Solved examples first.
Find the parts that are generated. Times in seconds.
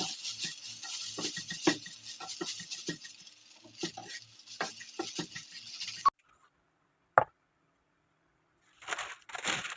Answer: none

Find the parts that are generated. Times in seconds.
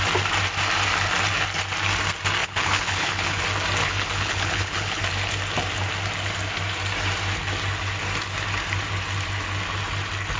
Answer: 2.4-3.4 (codec, HILCodec); 3.8-5.0